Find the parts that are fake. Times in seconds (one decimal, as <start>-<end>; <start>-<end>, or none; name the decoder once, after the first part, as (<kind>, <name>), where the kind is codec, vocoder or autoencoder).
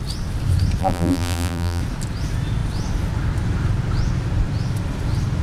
0.8-1.8 (vocoder, BigVGAN v2)